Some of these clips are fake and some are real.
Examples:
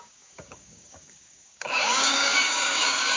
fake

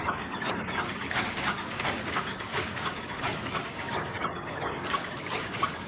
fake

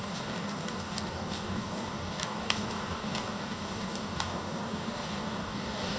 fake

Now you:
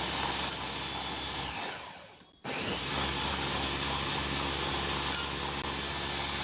real